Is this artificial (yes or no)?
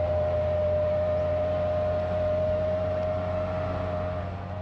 no